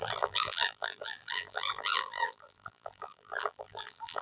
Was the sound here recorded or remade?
remade